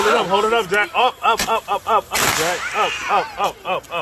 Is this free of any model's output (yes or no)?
yes